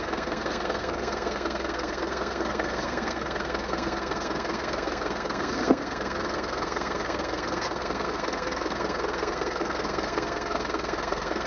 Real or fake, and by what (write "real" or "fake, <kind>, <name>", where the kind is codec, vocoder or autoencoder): fake, codec, SNAC